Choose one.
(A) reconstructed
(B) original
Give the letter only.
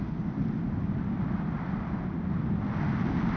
B